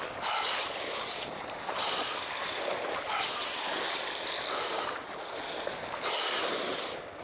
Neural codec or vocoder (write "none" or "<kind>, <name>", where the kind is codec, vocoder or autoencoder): none